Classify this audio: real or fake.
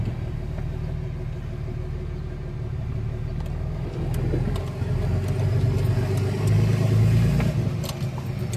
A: real